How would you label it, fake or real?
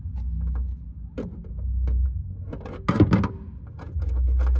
real